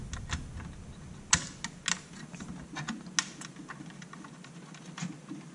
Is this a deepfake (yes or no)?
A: no